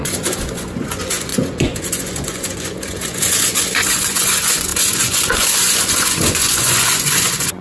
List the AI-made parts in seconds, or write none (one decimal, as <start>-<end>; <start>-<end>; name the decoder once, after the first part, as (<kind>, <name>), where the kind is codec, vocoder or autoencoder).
0.0-7.6 (vocoder, Vocos)